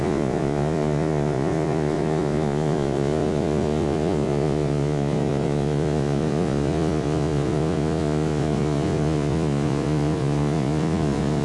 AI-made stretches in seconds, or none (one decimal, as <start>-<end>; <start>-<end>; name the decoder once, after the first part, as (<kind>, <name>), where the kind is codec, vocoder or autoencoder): 0.0-11.4 (vocoder, Vocos)